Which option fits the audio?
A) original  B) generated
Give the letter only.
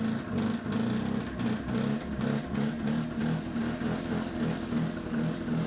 A